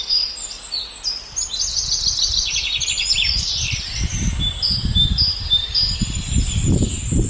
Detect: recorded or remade recorded